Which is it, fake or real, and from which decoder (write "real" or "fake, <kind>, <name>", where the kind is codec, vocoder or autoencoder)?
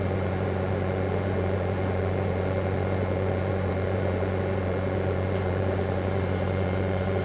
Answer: fake, vocoder, Vocos